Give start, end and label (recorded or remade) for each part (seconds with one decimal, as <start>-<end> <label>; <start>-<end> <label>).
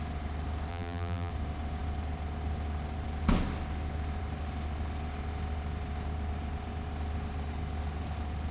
0.0-0.7 recorded; 0.7-1.3 remade; 1.3-8.5 recorded